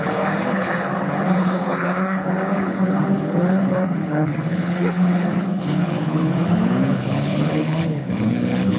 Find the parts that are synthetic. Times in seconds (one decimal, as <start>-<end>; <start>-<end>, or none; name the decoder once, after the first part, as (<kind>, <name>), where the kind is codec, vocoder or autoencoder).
0.0-8.8 (codec, HILCodec)